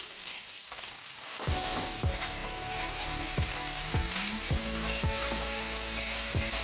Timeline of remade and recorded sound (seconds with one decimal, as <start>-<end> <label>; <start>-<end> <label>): 0.0-6.6 remade